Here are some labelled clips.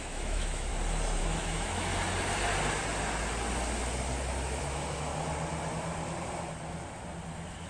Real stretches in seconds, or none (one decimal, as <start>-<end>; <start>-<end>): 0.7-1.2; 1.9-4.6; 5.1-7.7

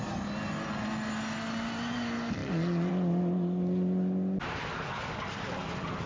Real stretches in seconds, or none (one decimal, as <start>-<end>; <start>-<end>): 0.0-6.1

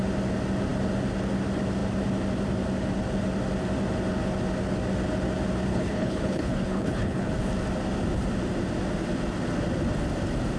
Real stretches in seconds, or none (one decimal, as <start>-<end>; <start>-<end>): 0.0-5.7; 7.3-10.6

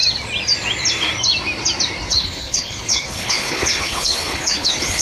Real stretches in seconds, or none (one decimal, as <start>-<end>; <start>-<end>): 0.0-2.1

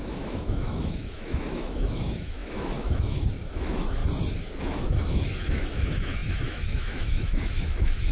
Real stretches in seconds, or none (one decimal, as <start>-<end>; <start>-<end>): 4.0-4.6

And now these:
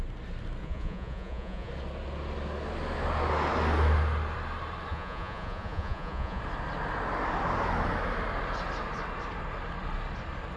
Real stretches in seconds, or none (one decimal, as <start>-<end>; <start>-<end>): 0.0-0.6; 1.7-4.9; 6.4-10.6

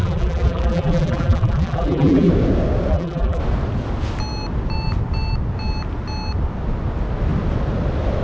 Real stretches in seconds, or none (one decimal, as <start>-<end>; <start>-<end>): 2.3-2.9; 3.4-8.2

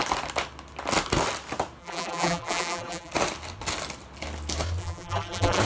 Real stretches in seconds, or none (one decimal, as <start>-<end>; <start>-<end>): 0.0-1.8; 3.1-4.8